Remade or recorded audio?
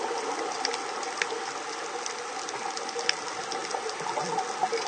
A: recorded